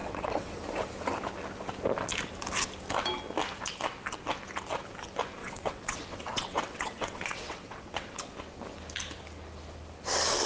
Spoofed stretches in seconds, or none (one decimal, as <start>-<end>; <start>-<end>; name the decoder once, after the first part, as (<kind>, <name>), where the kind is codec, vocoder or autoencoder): 0.0-0.6 (vocoder, WaveNeXt); 5.4-8.2